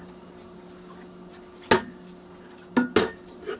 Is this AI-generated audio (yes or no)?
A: no